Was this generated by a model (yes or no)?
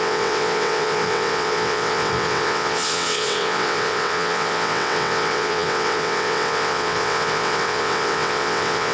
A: yes